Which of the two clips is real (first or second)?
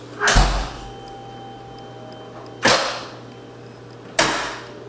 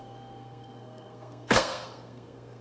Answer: first